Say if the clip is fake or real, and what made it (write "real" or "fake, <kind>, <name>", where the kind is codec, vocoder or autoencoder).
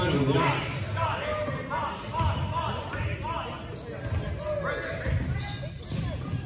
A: real